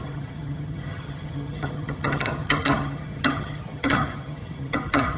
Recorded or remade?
remade